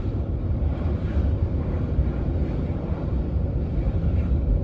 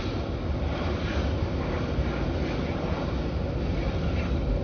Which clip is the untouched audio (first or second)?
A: second